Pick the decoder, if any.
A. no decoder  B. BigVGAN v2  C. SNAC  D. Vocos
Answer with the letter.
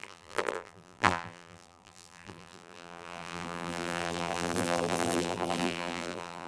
B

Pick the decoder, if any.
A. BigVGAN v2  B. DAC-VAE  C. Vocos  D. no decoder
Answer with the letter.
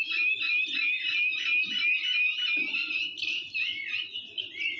D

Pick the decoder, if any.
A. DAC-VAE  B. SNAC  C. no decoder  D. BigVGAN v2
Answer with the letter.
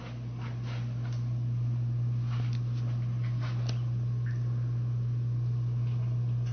C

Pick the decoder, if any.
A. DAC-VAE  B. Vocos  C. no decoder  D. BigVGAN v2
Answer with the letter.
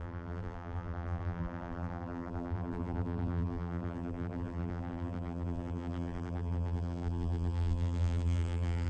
D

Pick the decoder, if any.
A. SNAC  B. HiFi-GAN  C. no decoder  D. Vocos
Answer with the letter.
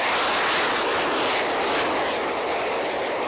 C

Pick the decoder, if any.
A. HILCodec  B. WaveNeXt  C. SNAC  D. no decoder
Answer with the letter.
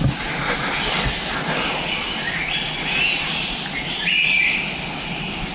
D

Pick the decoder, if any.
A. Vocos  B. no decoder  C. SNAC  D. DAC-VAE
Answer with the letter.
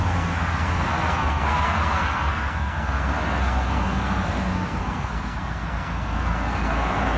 C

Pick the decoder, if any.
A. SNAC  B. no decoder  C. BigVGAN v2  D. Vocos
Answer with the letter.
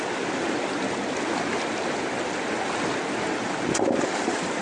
B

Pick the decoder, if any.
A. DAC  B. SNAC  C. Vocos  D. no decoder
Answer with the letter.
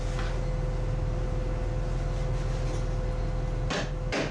D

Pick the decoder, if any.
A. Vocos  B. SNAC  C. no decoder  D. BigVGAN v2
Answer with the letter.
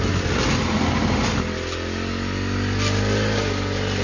C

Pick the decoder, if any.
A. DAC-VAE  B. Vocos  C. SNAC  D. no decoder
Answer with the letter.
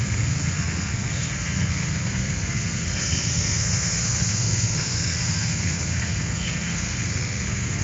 C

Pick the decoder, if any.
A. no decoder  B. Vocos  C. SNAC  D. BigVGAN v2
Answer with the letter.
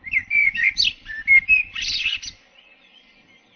A